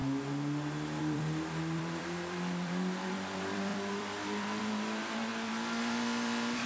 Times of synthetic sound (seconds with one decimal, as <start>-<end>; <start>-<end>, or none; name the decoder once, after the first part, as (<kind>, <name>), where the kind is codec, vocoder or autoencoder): 1.0-6.7 (vocoder, BigVGAN v2)